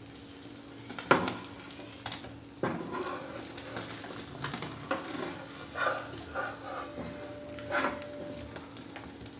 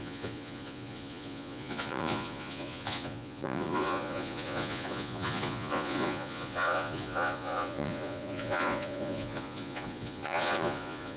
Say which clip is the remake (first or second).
second